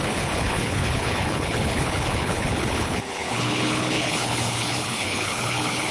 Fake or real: fake